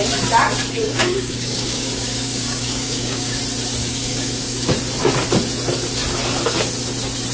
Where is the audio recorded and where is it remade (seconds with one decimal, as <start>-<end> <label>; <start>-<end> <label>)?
0.0-0.8 recorded; 0.8-3.4 remade; 3.4-3.8 recorded; 3.8-4.7 remade; 4.7-7.3 recorded